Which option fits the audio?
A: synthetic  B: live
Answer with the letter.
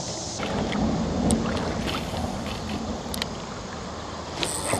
B